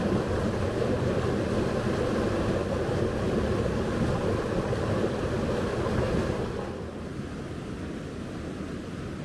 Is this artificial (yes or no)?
no